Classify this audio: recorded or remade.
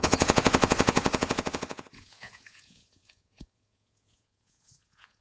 remade